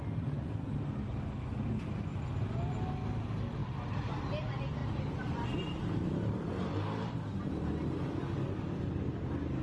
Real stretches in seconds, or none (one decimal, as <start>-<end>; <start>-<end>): 0.0-4.8; 8.2-9.6